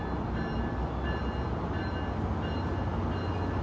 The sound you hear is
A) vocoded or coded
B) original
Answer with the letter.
B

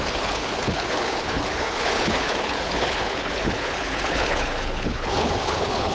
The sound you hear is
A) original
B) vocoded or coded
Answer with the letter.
B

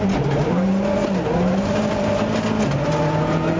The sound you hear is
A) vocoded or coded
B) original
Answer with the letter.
B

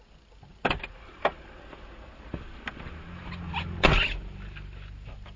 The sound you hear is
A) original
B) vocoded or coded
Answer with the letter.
A